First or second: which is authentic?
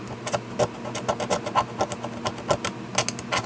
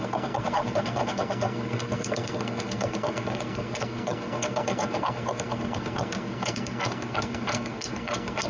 first